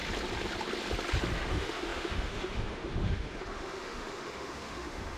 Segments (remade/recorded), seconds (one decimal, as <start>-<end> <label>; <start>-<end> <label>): 0.0-1.5 recorded; 1.5-5.2 remade